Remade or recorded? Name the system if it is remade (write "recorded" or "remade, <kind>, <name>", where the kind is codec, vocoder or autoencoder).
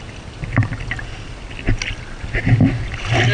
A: recorded